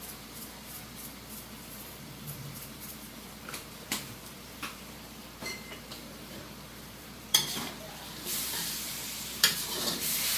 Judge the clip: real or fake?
fake